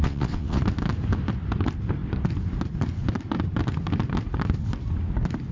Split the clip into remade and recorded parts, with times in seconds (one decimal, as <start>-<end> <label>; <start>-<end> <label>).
0.0-0.6 remade; 0.6-5.5 recorded